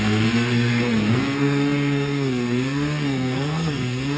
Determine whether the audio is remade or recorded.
remade